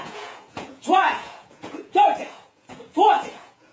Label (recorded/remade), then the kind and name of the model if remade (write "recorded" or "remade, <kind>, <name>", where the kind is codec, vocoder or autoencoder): remade, vocoder, Vocos